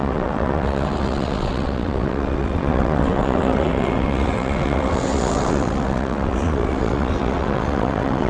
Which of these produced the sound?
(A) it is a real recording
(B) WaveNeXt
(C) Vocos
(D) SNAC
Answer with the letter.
B